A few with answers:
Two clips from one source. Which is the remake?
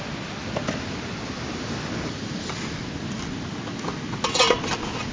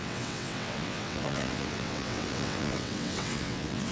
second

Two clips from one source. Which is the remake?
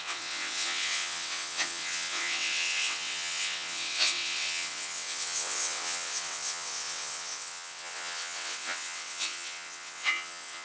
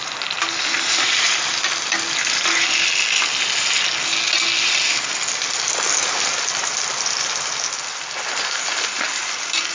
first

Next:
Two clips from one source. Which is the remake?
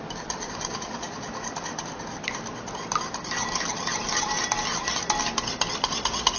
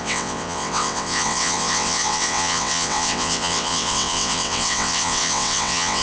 second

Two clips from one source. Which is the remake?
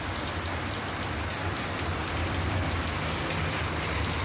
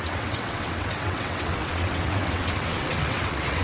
second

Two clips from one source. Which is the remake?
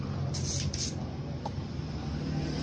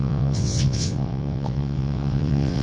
second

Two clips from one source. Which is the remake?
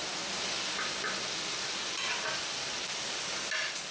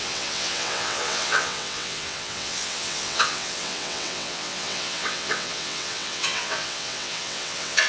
second